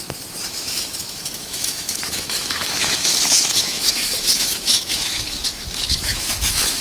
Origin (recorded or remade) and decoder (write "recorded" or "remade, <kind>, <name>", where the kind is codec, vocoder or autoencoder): remade, autoencoder, DAC-VAE